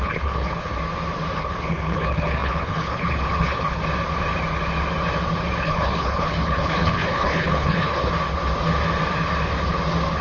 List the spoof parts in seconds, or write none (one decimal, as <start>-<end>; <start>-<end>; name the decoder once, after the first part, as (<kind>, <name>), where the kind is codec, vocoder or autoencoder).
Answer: 0.0-0.7 (codec, HILCodec); 1.4-3.8; 5.6-8.1